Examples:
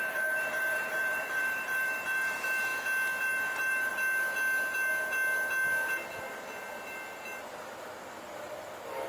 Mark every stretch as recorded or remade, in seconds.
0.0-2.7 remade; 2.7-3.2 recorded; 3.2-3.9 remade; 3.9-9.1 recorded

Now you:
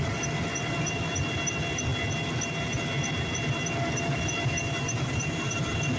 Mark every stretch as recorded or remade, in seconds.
0.0-1.9 remade; 1.9-4.4 recorded; 4.4-6.0 remade

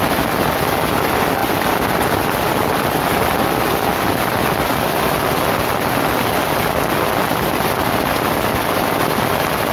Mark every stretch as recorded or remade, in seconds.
0.0-9.7 recorded

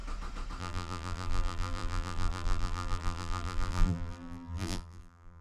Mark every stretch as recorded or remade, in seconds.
0.0-0.6 recorded; 0.6-5.4 remade

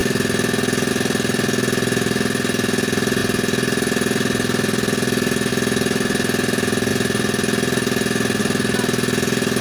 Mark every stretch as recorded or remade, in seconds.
0.0-9.6 recorded

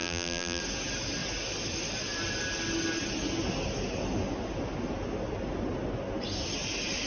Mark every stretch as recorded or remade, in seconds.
0.0-0.6 remade; 0.6-7.1 recorded

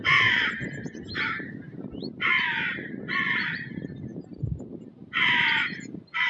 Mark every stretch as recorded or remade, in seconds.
0.0-6.3 remade

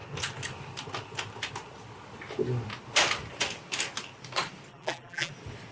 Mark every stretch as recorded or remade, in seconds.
0.0-4.7 recorded; 4.7-5.3 remade; 5.3-5.7 recorded